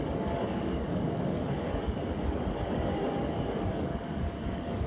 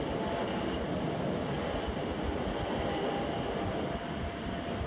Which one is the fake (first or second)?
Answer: first